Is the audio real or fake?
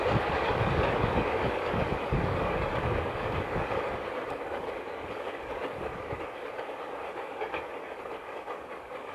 fake